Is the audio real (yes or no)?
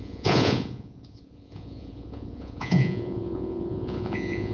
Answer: no